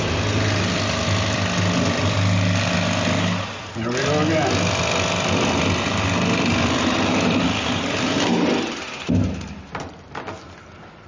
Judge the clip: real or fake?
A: real